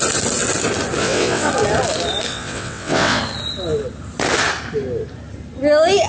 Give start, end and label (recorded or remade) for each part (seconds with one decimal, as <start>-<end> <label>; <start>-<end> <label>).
0.0-1.0 recorded; 1.0-1.5 remade; 1.5-2.3 recorded; 2.3-3.2 remade; 3.2-6.1 recorded